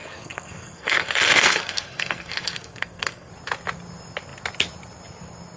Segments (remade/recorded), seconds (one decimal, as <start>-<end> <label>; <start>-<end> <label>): 0.0-3.3 remade; 3.3-5.6 recorded